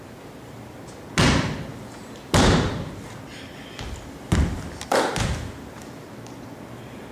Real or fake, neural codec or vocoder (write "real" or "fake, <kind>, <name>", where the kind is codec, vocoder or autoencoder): real